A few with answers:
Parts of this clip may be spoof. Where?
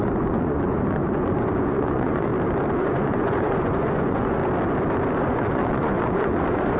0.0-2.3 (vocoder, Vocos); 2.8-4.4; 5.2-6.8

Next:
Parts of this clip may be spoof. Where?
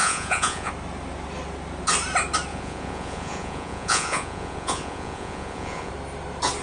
0.0-0.7 (vocoder, Vocos); 2.5-5.9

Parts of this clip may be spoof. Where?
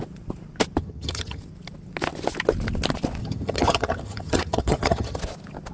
0.8-1.4 (vocoder, HiFi-GAN); 3.2-5.2